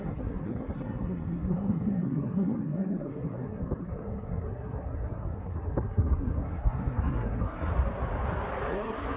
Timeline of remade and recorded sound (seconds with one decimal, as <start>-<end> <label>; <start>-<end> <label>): 0.0-7.7 remade; 7.7-8.7 recorded; 8.7-9.2 remade